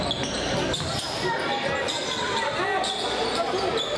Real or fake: real